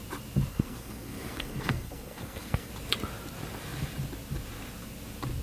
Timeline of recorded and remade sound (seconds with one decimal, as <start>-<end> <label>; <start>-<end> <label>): 0.0-0.5 recorded; 0.5-2.7 remade; 2.7-5.4 recorded